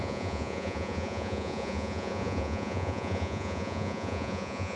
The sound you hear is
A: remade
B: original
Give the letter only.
A